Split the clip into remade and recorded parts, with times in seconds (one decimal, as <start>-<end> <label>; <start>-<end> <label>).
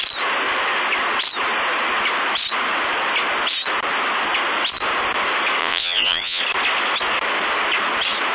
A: 0.0-5.6 recorded; 5.6-6.4 remade; 6.4-8.3 recorded